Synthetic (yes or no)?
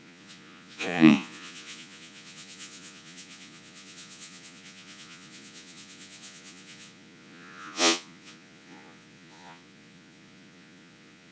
yes